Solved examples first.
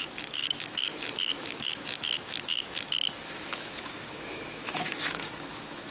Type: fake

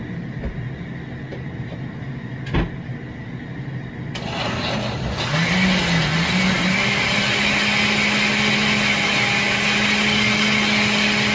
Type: real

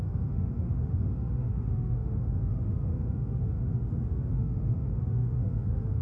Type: fake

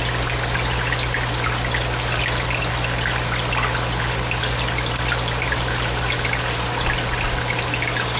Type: real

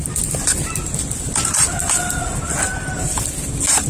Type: real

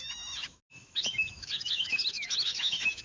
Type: fake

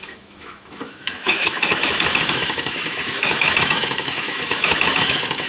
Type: fake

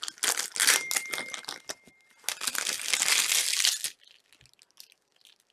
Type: real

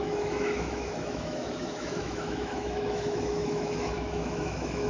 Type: fake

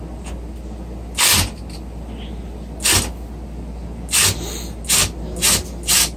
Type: real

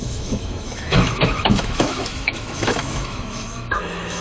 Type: fake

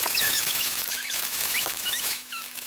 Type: fake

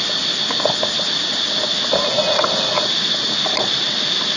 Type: real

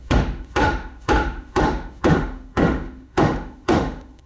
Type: fake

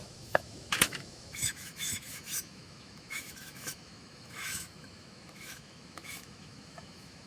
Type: fake